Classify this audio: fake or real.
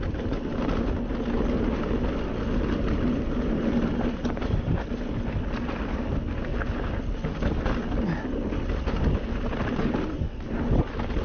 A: real